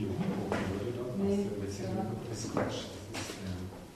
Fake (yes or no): no